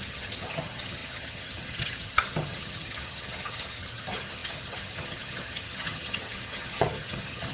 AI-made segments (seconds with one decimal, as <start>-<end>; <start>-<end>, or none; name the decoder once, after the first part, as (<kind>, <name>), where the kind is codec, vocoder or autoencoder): 0.0-7.5 (vocoder, HiFi-GAN)